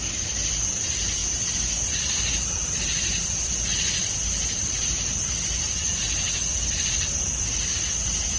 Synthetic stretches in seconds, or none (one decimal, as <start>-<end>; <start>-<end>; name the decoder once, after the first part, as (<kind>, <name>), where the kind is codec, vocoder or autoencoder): none